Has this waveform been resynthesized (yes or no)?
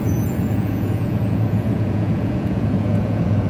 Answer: yes